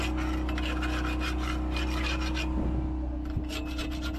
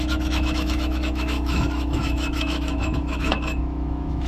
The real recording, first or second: first